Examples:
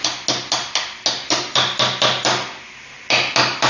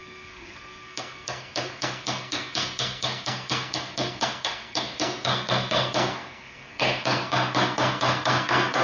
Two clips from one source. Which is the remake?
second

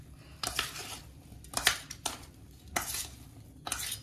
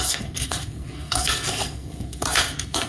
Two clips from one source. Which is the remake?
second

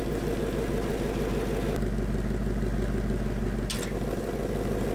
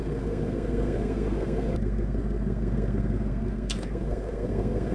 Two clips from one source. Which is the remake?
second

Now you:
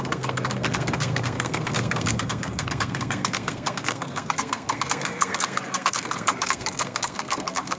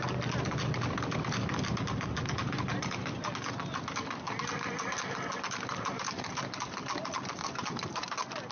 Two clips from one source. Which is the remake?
first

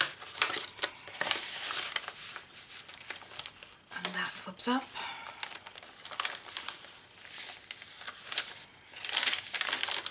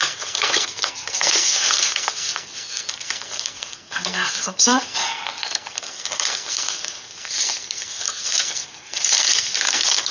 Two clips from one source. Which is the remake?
second